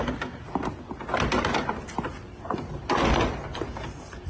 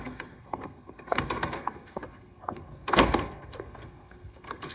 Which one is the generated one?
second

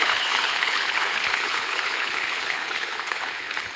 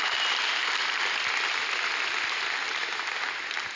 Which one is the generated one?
first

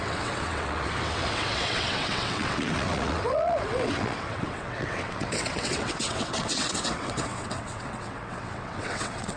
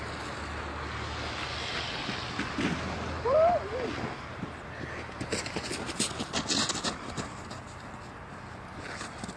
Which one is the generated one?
first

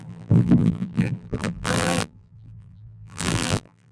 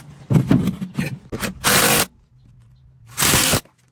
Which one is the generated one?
first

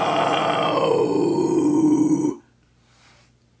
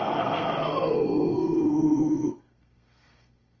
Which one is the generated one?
second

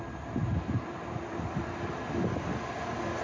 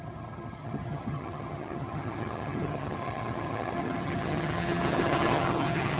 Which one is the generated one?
second